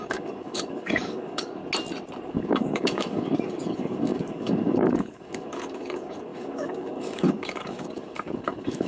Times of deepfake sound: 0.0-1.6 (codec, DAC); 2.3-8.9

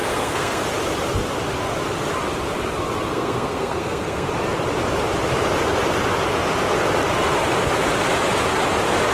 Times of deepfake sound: 0.0-0.6 (codec, SNAC); 3.1-4.3

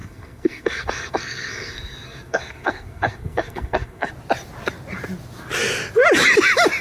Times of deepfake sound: 0.0-4.1 (codec, SNAC)

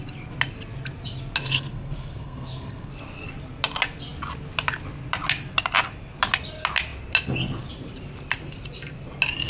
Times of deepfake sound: 1.4-2.9 (codec, SNAC)

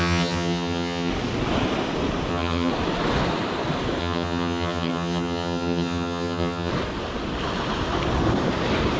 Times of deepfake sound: 0.0-1.1 (vocoder, HiFi-GAN); 2.3-2.7; 4.0-6.7